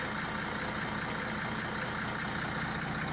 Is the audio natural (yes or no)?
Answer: yes